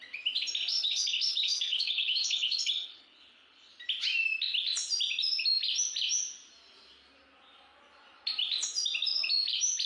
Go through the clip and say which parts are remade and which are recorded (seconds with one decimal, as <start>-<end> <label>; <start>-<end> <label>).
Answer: 0.0-0.7 recorded; 0.7-3.7 remade; 3.7-9.9 recorded